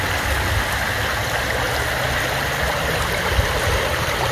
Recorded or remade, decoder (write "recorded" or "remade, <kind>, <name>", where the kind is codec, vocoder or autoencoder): recorded